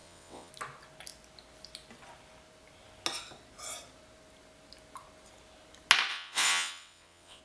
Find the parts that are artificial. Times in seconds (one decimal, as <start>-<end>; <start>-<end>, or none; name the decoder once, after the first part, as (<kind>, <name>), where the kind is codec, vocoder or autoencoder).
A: 0.0-0.5 (vocoder, WaveNeXt); 6.1-7.4